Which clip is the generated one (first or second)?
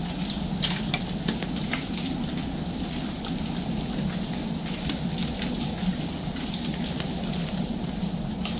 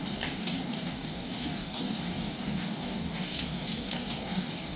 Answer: second